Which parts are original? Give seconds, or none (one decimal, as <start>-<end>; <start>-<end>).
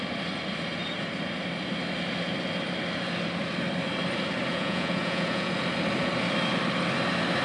0.0-4.5; 5.5-7.4